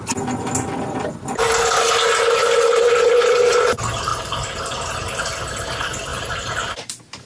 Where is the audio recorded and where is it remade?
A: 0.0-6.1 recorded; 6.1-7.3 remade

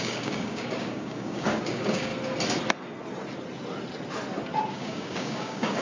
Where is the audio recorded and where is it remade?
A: 0.0-2.1 remade; 2.1-4.7 recorded; 4.7-5.8 remade

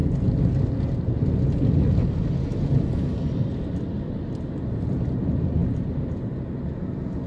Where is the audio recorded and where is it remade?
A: 0.0-7.3 recorded

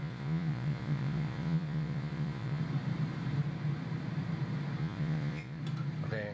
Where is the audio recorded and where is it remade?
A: 0.0-2.6 remade; 2.6-4.8 recorded; 4.8-5.6 remade; 5.6-6.3 recorded

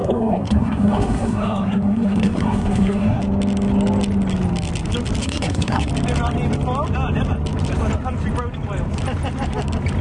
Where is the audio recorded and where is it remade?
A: 0.0-3.2 remade; 3.2-5.2 recorded; 5.2-5.9 remade; 5.9-10.0 recorded